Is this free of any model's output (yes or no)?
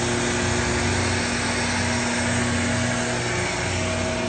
yes